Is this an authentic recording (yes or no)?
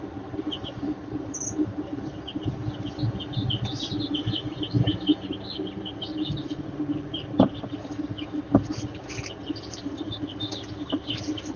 yes